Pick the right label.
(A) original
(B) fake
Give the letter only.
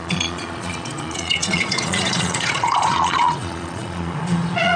B